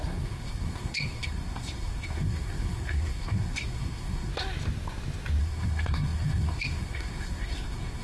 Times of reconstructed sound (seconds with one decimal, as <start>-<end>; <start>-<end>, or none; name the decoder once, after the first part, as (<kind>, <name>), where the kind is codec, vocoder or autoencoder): 0.0-4.3 (codec, SNAC); 5.4-8.0